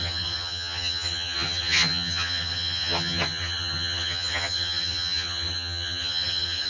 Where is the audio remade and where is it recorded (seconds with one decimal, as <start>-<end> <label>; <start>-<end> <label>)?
0.0-6.7 remade